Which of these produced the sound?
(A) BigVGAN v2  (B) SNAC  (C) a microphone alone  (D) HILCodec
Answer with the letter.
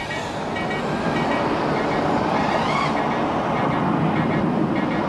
C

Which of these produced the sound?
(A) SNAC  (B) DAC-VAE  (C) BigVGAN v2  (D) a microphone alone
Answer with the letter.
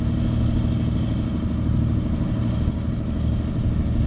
D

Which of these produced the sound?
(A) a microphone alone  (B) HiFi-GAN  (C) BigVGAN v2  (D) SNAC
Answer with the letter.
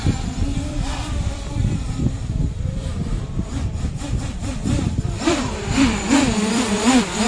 C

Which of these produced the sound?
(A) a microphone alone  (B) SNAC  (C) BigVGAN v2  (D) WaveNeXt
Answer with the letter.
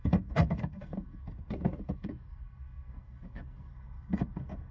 B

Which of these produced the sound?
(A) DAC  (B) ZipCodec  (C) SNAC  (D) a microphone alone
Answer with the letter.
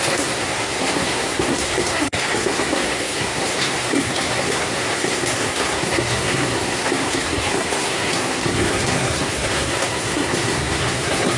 C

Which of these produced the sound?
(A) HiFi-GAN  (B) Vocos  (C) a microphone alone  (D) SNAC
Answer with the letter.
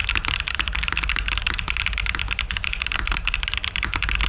C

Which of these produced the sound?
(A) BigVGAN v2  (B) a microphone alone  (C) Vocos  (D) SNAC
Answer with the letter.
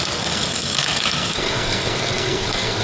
D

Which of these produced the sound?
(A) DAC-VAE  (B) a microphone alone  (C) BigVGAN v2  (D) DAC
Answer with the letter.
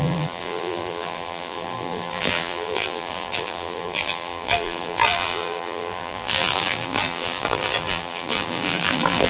C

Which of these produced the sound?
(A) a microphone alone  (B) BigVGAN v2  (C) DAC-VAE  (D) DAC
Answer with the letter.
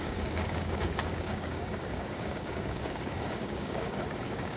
D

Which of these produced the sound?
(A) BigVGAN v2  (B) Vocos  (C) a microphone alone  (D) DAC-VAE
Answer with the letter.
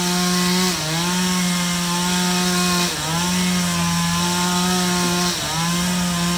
C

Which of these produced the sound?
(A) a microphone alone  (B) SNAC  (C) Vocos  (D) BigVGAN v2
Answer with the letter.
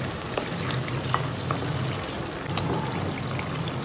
A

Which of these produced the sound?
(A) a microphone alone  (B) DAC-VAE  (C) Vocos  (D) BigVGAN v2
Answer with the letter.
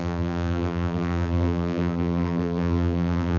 D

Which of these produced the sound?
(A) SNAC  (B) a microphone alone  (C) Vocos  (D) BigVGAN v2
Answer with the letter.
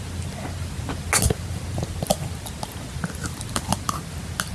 B